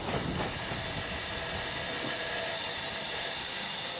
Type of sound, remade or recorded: recorded